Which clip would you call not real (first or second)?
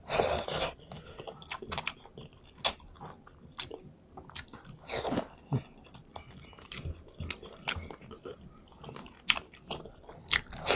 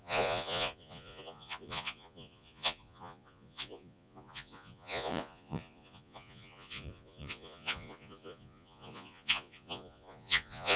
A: second